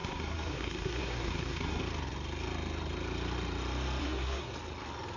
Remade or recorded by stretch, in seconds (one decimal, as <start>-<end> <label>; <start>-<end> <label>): 0.0-1.8 remade; 1.8-4.0 recorded; 4.0-4.5 remade; 4.5-5.2 recorded

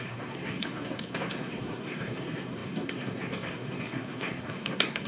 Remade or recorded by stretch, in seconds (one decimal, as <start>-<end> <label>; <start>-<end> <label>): 0.0-5.1 remade

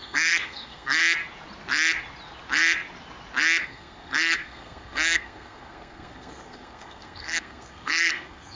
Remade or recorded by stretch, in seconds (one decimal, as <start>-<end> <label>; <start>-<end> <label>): 0.0-1.0 remade; 1.0-3.6 recorded; 3.6-8.6 remade

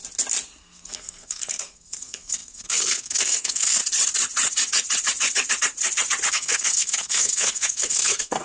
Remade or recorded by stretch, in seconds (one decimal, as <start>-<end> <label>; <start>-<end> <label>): 0.0-0.6 recorded; 0.6-3.8 remade; 3.8-6.3 recorded; 6.3-8.4 remade

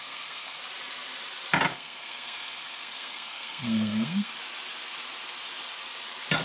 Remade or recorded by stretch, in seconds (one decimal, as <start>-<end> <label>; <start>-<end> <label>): 0.0-0.6 remade; 0.6-1.7 recorded; 1.7-4.3 remade; 4.3-6.4 recorded

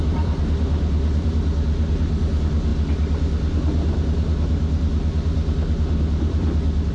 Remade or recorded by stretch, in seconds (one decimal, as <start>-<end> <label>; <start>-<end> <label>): 0.0-6.9 recorded

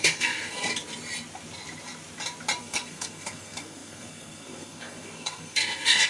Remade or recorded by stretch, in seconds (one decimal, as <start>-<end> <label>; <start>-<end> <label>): 0.0-0.7 remade; 0.7-2.6 recorded; 2.6-6.1 remade

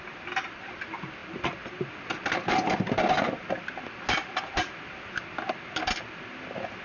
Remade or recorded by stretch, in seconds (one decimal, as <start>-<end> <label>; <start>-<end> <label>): 0.0-6.8 recorded